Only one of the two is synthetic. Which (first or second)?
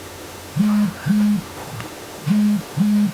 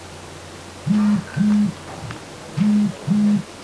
first